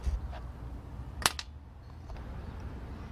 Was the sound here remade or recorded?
recorded